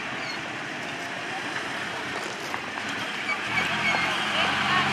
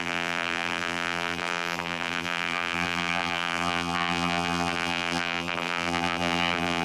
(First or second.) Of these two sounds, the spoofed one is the second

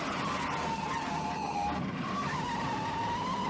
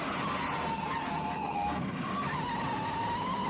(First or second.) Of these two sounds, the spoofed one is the first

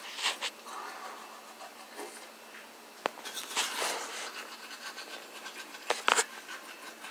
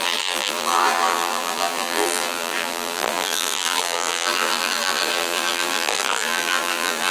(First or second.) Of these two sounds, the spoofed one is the second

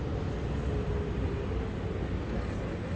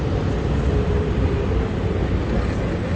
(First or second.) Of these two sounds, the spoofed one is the second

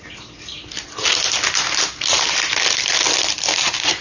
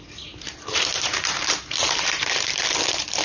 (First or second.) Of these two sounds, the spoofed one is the second